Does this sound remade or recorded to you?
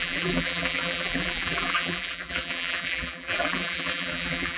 remade